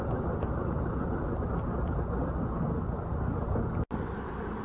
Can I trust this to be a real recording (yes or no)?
yes